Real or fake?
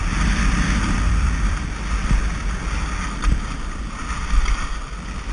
real